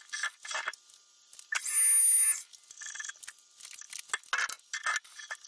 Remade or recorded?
recorded